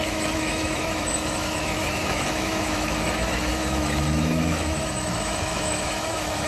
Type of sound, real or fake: fake